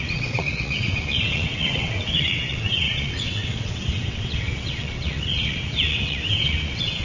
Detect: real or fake fake